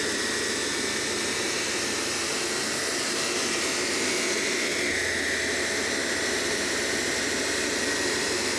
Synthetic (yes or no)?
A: no